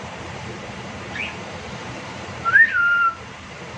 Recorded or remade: remade